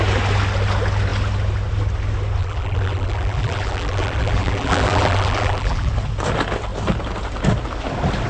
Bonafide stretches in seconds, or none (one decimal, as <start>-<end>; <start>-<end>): 0.0-2.4; 5.9-8.3